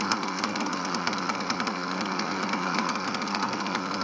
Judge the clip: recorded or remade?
remade